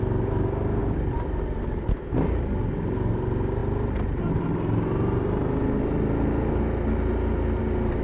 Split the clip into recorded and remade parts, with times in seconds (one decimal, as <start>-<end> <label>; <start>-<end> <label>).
0.0-0.8 recorded; 0.8-1.6 remade; 1.6-8.0 recorded